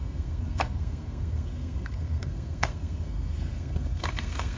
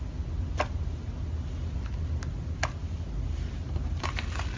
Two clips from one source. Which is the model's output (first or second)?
first